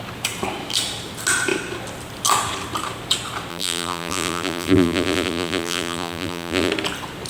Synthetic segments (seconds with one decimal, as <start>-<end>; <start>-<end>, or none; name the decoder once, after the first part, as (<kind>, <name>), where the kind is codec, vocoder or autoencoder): 3.5-6.7 (vocoder, BigVGAN v2)